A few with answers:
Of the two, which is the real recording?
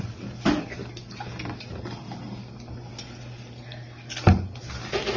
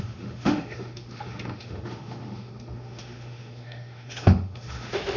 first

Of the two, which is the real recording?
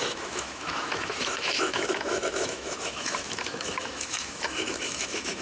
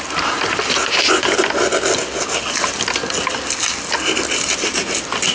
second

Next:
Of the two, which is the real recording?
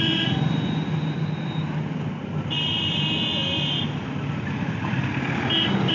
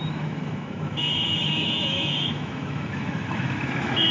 first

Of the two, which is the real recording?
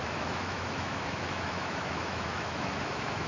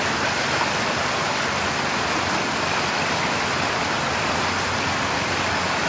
second